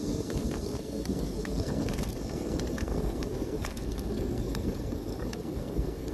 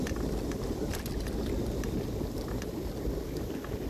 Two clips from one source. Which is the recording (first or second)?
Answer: second